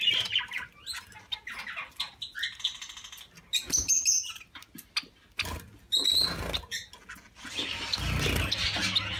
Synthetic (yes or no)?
no